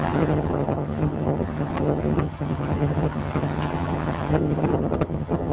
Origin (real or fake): fake